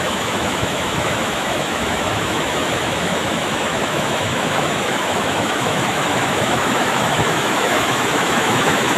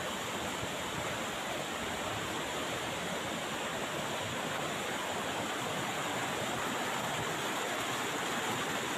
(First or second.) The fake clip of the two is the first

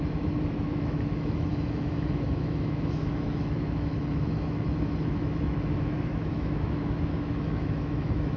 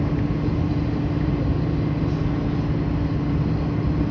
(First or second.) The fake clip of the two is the first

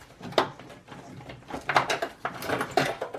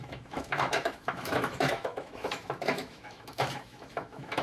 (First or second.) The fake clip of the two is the second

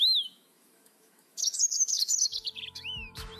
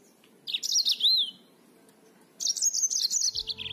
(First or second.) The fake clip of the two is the first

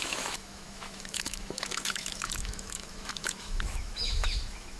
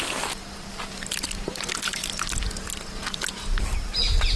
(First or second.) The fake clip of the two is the first